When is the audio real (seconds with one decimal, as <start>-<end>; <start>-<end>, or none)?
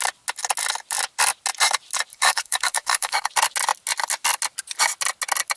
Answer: 0.0-2.1; 3.3-5.6